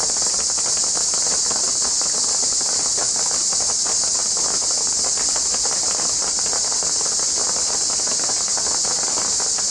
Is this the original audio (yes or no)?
yes